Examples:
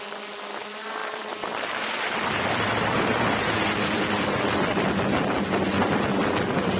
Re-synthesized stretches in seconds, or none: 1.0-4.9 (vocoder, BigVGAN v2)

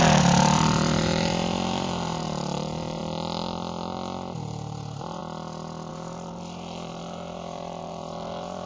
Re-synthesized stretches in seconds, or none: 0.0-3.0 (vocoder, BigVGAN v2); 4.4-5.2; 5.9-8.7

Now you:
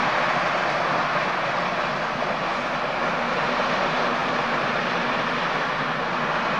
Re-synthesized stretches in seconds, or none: 4.2-5.1 (vocoder, BigVGAN v2)